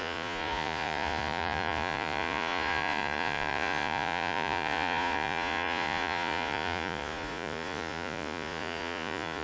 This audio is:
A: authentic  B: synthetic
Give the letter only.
B